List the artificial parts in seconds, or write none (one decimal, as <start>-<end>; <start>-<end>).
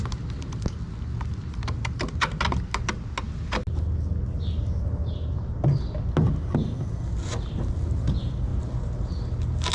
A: none